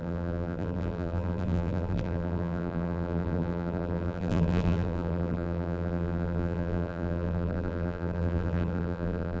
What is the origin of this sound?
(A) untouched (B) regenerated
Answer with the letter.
B